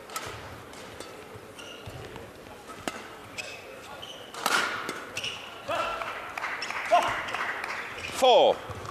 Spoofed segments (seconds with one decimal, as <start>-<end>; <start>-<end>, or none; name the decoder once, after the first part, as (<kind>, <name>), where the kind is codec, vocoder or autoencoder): 3.2-5.1 (vocoder, BigVGAN v2); 5.9-7.6